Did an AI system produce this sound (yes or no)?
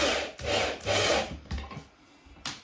no